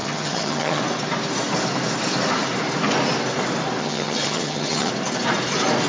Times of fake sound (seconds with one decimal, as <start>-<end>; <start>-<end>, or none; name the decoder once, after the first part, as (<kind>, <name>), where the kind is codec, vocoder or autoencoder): 0.0-0.8 (vocoder, HiFi-GAN); 3.8-4.9